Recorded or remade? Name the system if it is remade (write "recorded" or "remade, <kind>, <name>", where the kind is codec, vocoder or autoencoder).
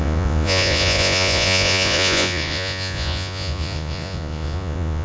remade, vocoder, Vocos